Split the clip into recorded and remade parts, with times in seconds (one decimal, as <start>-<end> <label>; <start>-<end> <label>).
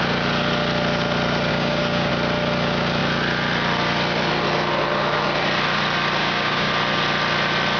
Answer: 0.0-1.5 recorded; 1.5-2.1 remade; 2.1-6.2 recorded; 6.2-6.7 remade; 6.7-7.8 recorded